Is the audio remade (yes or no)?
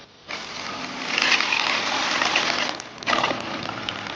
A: no